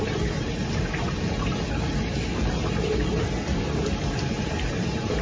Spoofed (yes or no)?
yes